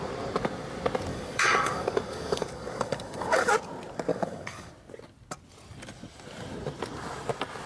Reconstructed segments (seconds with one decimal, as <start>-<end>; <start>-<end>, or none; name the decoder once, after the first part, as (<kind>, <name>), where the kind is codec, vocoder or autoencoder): 1.1-3.5 (codec, DAC); 4.1-4.7